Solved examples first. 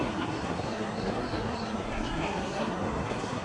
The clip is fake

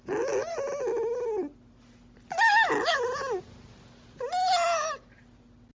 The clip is real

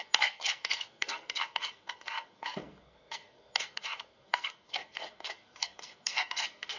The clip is fake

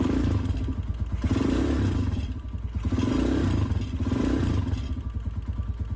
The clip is real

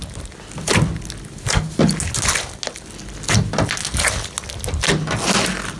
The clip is real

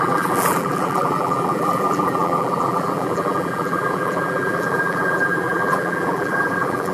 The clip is fake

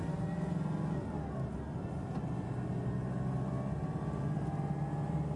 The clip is real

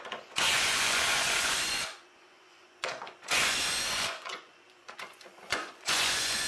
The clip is fake